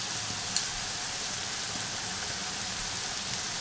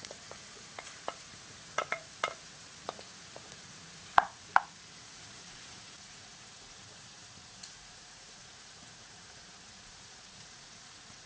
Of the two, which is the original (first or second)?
first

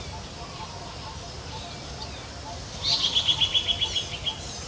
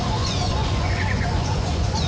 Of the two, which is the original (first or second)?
first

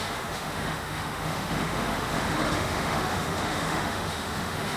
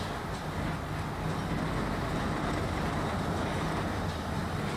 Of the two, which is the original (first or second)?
second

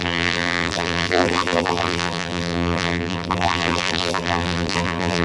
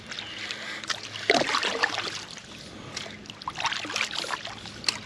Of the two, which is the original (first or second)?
second